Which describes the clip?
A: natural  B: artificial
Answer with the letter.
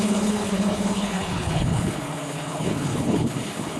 B